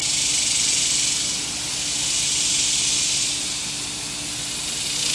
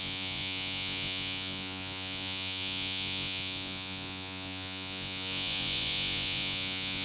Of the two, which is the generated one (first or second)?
second